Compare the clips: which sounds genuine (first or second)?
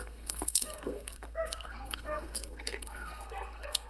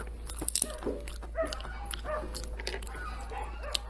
second